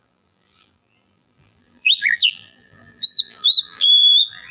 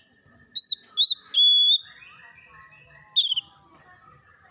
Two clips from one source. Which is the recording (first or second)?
second